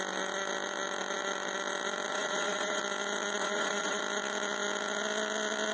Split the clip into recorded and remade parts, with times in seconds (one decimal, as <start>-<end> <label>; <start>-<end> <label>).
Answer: 0.0-2.1 recorded; 2.1-2.8 remade; 2.8-3.4 recorded; 3.4-4.0 remade; 4.0-5.7 recorded

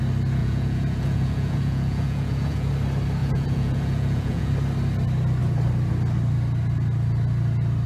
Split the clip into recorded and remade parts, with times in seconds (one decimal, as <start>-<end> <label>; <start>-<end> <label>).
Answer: 0.0-0.4 recorded; 0.4-2.7 remade; 2.7-3.2 recorded; 3.2-4.5 remade; 4.5-7.9 recorded

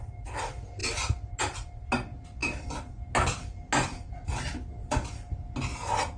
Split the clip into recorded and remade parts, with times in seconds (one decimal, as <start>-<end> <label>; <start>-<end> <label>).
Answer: 0.0-6.2 recorded

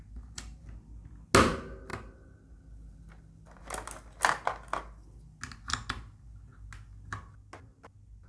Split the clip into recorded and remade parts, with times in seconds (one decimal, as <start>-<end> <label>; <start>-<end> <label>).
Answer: 0.0-8.3 recorded

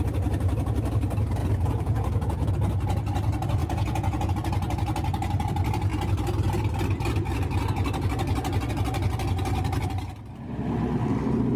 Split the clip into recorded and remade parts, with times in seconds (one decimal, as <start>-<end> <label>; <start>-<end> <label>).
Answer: 0.0-1.4 recorded; 1.4-2.5 remade; 2.5-3.6 recorded; 3.6-4.3 remade; 4.3-11.6 recorded